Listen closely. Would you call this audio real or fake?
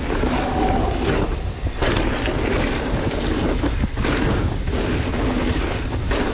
real